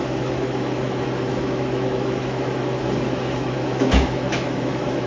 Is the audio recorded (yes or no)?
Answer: no